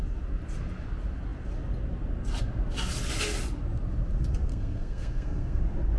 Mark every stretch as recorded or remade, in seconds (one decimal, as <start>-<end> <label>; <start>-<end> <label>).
0.0-4.5 recorded; 4.5-5.6 remade; 5.6-6.0 recorded